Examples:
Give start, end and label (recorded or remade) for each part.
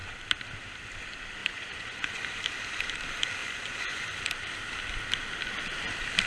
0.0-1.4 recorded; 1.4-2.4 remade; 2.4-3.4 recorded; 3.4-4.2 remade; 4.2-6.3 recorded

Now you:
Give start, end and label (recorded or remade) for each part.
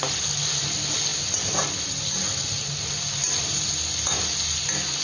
0.0-5.0 recorded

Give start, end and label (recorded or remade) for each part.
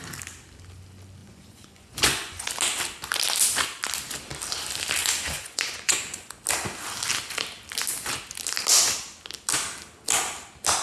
0.0-1.2 recorded; 1.2-2.5 remade; 2.5-5.0 recorded; 5.0-6.4 remade; 6.4-10.8 recorded